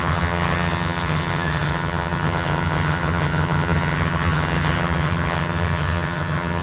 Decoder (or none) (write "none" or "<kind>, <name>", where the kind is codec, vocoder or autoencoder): vocoder, HiFi-GAN